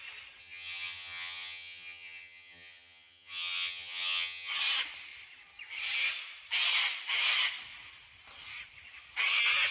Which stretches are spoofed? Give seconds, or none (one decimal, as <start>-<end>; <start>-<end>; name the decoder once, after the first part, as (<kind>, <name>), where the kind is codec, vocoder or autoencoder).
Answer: 0.4-4.5 (vocoder, HiFi-GAN)

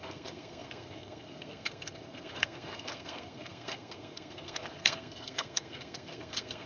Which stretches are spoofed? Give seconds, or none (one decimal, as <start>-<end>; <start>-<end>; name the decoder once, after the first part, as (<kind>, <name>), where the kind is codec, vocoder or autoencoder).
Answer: 0.0-6.7 (codec, SNAC)

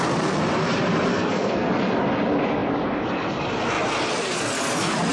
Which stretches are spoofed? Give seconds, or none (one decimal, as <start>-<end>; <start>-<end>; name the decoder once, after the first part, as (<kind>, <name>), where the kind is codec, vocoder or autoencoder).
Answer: 1.1-1.7 (codec, SNAC)

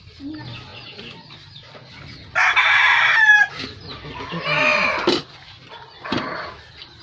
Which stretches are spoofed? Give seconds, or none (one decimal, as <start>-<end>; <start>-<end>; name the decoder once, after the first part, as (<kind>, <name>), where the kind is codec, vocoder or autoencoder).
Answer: none